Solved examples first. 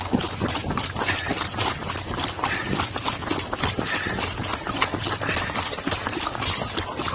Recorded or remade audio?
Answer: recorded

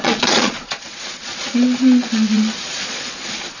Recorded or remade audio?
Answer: remade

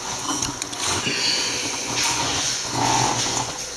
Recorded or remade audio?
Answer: remade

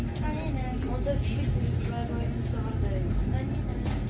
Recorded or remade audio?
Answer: recorded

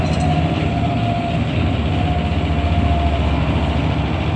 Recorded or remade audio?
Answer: recorded